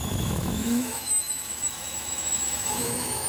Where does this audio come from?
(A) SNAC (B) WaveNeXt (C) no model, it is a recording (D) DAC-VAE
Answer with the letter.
D